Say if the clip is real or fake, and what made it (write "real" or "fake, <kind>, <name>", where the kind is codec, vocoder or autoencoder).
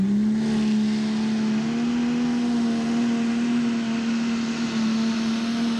real